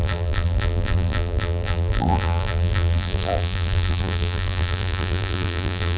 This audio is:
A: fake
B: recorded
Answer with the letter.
A